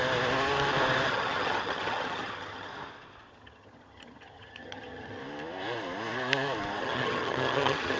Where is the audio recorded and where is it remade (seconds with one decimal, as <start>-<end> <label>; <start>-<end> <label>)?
0.0-1.1 recorded; 1.1-2.7 remade; 2.7-3.3 recorded; 3.3-5.2 remade; 5.2-6.8 recorded; 6.8-8.0 remade